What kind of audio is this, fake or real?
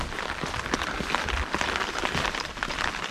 real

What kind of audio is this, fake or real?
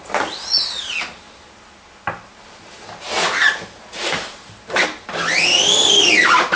real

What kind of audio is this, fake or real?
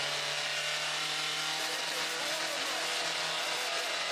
real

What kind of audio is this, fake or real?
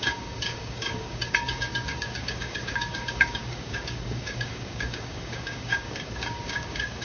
fake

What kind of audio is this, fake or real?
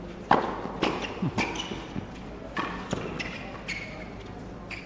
real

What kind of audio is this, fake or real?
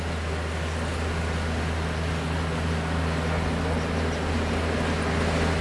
real